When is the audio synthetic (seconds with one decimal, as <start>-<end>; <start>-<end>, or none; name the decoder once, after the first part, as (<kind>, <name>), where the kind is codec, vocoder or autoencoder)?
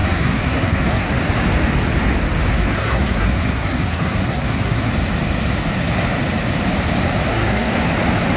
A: 0.0-1.2 (codec, SNAC); 2.5-4.9; 7.3-7.9